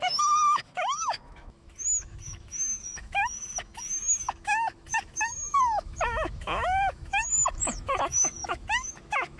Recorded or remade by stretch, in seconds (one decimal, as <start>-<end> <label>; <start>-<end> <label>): 0.0-9.4 remade